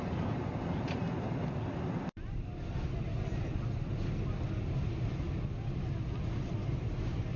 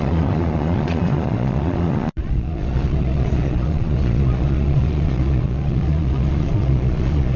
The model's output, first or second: second